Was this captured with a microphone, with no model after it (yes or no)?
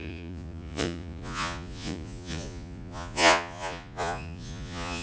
no